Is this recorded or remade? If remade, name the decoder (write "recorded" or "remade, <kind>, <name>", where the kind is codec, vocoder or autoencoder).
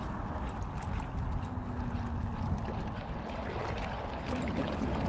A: recorded